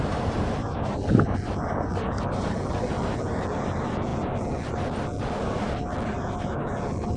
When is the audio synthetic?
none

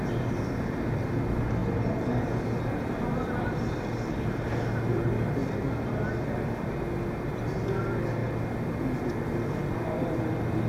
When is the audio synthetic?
none